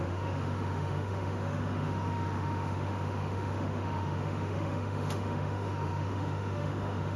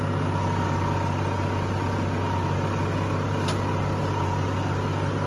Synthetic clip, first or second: first